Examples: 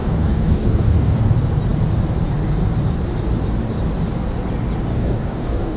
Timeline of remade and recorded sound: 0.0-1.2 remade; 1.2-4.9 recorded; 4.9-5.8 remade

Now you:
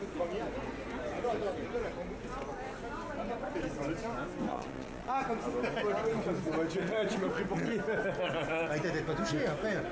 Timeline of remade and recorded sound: 0.0-4.5 recorded; 4.5-5.2 remade; 5.2-9.9 recorded

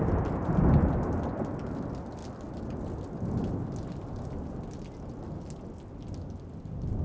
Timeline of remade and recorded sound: 0.0-2.2 remade; 2.2-6.4 recorded; 6.4-7.0 remade